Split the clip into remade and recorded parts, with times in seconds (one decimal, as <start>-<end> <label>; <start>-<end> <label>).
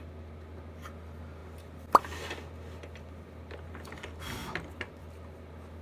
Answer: 0.0-5.8 recorded